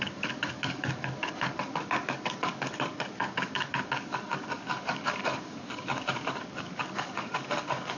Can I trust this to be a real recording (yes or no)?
no